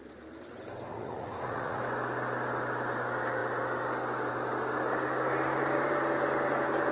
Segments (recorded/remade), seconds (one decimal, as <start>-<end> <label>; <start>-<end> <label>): 0.0-0.9 recorded; 0.9-1.8 remade; 1.8-6.9 recorded